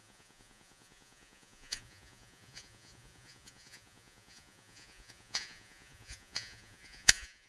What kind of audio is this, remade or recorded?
remade